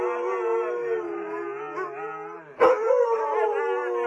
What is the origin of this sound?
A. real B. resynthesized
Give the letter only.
A